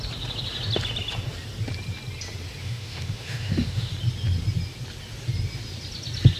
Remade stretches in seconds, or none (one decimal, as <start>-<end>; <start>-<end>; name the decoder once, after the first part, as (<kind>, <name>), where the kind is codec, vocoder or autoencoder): 2.6-3.9 (autoencoder, DAC-VAE)